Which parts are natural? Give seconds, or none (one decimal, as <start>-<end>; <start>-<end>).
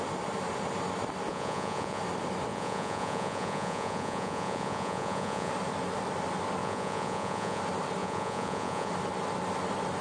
0.0-1.3; 2.0-2.5; 5.5-6.6; 7.6-8.0; 8.9-10.0